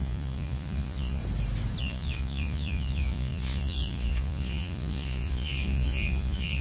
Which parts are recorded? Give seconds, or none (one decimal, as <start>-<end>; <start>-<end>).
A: 1.2-1.8